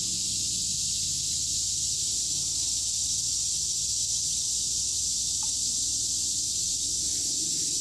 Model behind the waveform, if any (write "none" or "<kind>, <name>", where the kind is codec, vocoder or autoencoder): none